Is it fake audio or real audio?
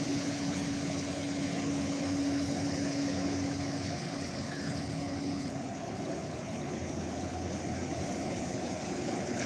fake